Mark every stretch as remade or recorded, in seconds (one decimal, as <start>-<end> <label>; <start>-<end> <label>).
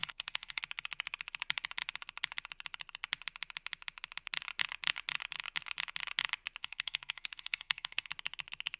0.0-0.6 remade; 0.6-6.6 recorded; 6.6-8.1 remade; 8.1-8.8 recorded